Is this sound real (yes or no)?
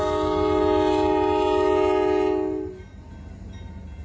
yes